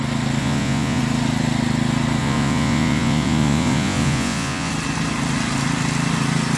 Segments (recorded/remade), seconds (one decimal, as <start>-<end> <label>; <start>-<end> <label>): 0.0-0.4 recorded; 0.4-1.0 remade; 1.0-2.2 recorded; 2.2-4.7 remade; 4.7-6.6 recorded